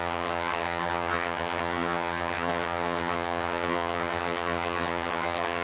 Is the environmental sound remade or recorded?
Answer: remade